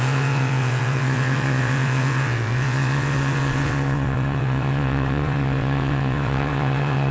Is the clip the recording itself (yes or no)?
no